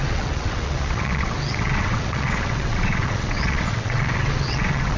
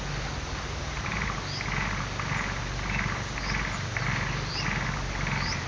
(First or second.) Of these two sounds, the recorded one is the second